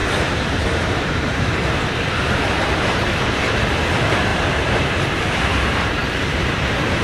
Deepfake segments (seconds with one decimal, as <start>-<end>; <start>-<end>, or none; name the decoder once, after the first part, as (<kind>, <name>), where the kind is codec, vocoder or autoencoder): 0.0-3.8 (vocoder, BigVGAN v2); 4.3-5.2; 6.0-7.0